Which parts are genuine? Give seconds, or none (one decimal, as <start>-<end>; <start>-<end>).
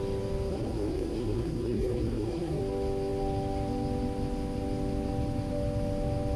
0.0-0.5; 2.6-6.4